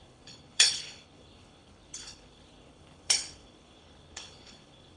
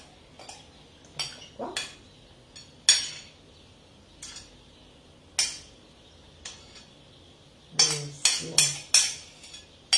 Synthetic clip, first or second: first